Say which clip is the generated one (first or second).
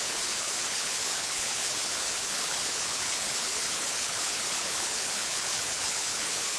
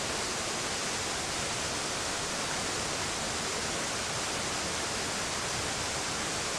first